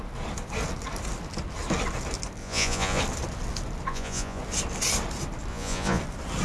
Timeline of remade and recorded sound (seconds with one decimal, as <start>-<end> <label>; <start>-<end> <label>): 0.0-2.4 recorded; 2.4-3.0 remade; 3.0-3.9 recorded; 3.9-4.4 remade; 4.4-5.5 recorded; 5.5-6.0 remade; 6.0-6.4 recorded